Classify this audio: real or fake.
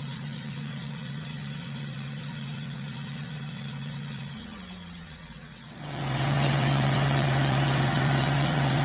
fake